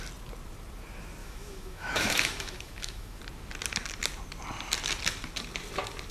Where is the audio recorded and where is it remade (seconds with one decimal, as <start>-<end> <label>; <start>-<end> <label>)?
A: 0.0-1.2 recorded; 1.2-3.2 remade; 3.2-6.1 recorded